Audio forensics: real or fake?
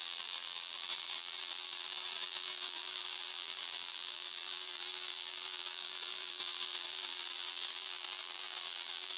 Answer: fake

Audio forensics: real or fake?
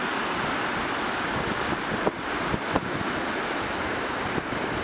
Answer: real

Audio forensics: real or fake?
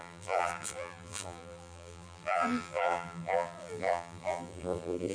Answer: fake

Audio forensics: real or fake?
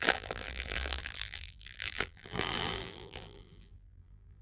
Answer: fake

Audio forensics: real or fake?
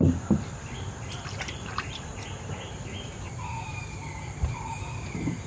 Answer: fake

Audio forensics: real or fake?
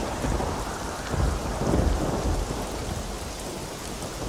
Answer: real